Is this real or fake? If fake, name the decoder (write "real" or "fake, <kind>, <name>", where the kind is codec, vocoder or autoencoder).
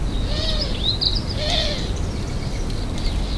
real